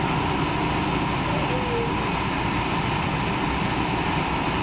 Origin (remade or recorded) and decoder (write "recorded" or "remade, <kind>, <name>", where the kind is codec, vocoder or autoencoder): recorded